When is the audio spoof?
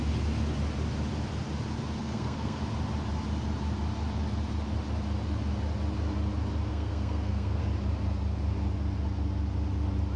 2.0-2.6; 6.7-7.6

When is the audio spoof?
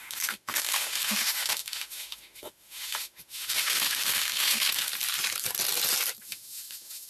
0.0-4.9; 6.2-7.1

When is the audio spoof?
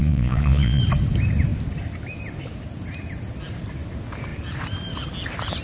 0.0-0.8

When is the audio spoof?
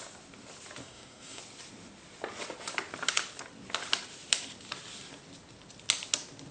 0.8-1.4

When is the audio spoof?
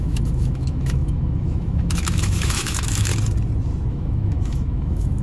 0.0-3.1; 3.9-5.2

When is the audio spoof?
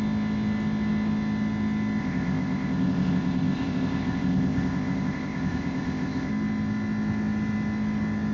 2.0-6.3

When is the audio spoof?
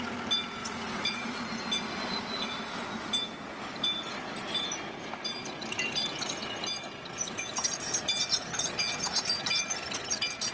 0.6-1.4